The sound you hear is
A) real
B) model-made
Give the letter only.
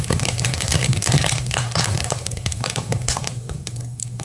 B